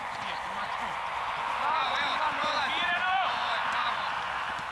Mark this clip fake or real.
fake